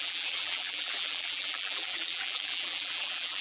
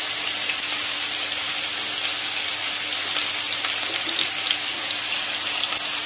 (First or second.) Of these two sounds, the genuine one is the second